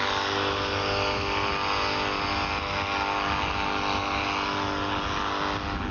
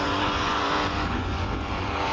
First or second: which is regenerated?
second